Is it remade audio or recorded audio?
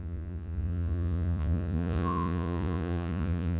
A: remade